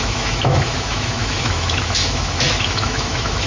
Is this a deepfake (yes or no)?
yes